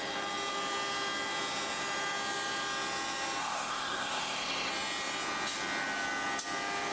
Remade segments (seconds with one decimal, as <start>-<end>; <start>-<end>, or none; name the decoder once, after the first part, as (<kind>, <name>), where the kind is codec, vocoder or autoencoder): 3.4-4.7 (codec, ZipCodec)